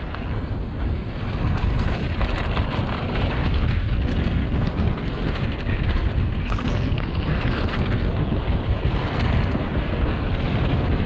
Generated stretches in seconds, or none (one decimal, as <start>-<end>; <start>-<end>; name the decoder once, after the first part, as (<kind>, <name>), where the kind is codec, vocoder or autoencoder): 0.0-2.0 (codec, SNAC); 3.3-11.1